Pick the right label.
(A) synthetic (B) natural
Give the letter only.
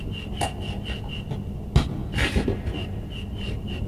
B